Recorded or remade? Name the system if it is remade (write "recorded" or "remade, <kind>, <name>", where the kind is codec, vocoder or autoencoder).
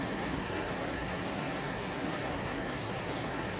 remade, codec, SNAC